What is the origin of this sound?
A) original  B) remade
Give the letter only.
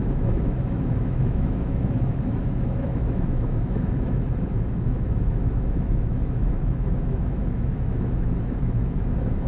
B